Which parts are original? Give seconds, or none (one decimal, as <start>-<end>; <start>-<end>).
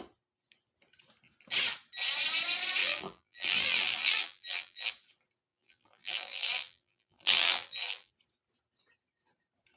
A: 0.0-2.8; 4.9-5.5; 8.1-9.8